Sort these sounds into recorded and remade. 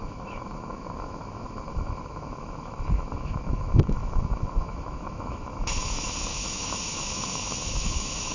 remade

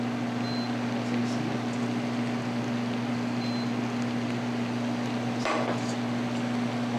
recorded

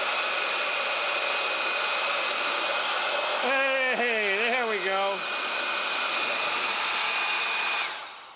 recorded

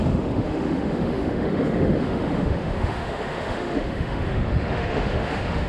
remade